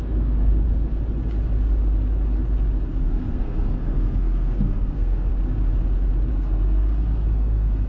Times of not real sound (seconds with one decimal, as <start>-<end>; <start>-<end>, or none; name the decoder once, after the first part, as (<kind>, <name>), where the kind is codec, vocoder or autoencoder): 0.0-0.5 (codec, SNAC); 3.0-5.3; 6.3-7.9